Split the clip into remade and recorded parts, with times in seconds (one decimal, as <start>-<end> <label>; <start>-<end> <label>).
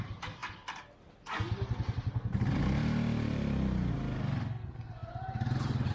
0.0-5.0 recorded; 5.0-5.9 remade